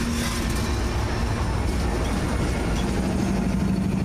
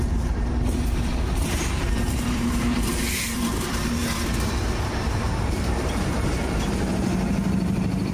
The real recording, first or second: first